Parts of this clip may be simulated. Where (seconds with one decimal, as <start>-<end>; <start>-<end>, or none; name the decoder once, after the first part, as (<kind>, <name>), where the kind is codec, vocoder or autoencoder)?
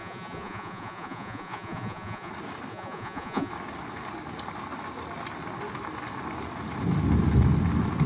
0.0-2.3 (vocoder, Vocos); 2.7-3.5